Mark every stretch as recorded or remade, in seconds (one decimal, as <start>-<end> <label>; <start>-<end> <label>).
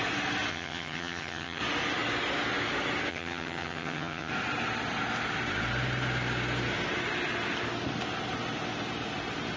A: 0.0-0.5 recorded; 0.5-1.6 remade; 1.6-3.1 recorded; 3.1-4.3 remade; 4.3-9.6 recorded